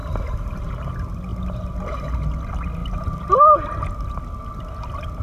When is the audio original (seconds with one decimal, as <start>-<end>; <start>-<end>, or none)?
0.6-5.2

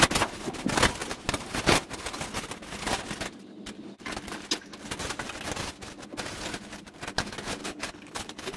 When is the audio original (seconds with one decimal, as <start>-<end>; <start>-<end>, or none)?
0.0-7.6

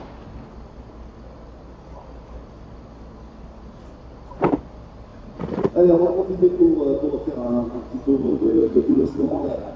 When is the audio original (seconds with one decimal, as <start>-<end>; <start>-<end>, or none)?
0.0-5.1; 6.1-8.2

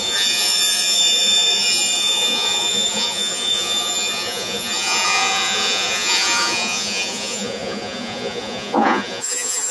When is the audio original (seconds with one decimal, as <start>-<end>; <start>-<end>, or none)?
none

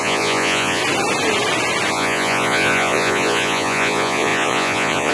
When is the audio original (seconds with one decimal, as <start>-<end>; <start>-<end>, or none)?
0.8-1.9